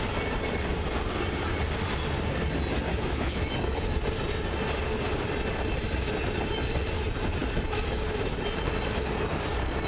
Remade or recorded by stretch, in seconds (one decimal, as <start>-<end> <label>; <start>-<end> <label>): 0.0-2.9 recorded; 2.9-3.8 remade; 3.8-9.9 recorded